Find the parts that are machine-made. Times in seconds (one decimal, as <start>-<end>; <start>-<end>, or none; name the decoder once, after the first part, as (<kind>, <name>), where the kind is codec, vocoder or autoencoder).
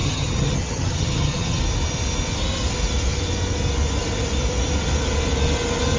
0.0-1.6 (vocoder, HiFi-GAN)